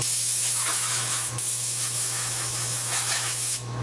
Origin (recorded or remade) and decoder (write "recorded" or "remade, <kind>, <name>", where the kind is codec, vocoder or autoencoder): remade, autoencoder, DAC-VAE